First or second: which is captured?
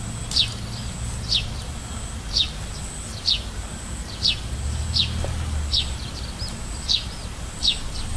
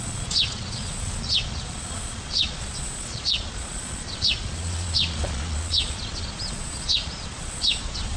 first